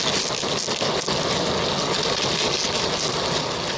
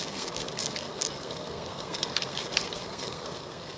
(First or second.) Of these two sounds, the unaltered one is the first